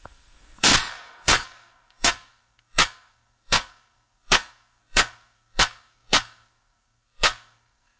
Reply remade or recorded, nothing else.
remade